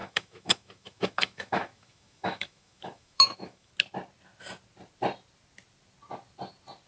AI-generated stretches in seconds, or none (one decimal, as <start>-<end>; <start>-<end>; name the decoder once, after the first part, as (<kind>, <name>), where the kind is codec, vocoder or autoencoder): 0.0-3.7 (autoencoder, DAC-VAE)